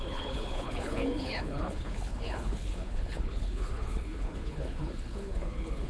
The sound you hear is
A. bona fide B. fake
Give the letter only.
B